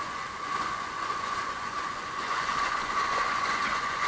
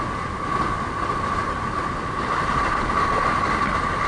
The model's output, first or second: first